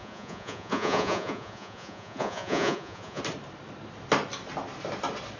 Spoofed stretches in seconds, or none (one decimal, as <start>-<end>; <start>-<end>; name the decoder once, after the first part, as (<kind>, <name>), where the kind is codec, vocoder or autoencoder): 0.0-3.2 (vocoder, Vocos)